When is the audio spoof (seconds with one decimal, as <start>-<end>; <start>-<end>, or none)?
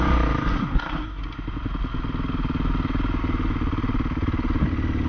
0.5-1.2